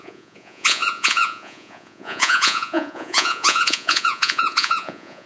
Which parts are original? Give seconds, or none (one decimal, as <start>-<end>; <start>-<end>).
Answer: none